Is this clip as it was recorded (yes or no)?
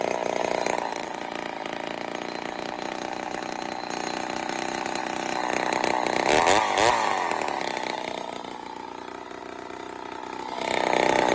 yes